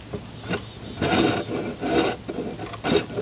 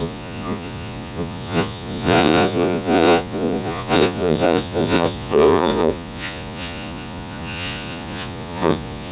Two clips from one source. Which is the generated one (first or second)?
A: second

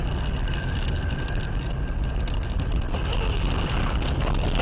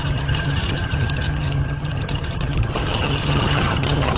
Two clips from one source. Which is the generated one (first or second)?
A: second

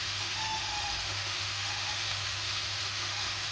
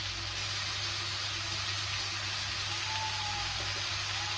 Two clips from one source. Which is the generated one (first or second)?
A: first